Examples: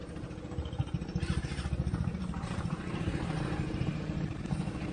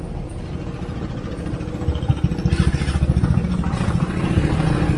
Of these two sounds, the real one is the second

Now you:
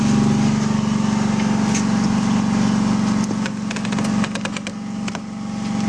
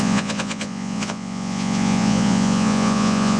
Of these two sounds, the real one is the first